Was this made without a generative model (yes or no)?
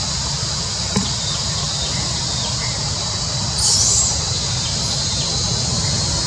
yes